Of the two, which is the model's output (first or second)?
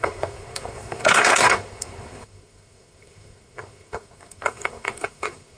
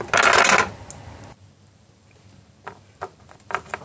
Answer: first